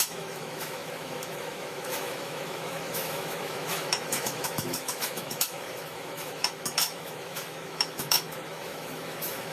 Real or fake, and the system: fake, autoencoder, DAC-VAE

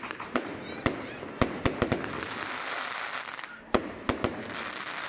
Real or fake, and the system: real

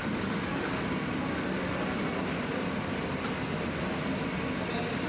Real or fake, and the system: real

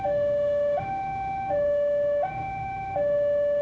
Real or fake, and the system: fake, autoencoder, DAC-VAE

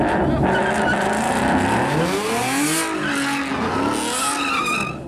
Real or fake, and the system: real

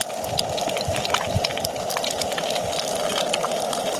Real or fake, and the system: real